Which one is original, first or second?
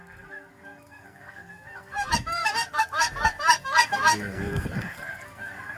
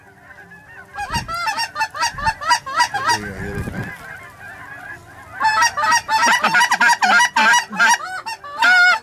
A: second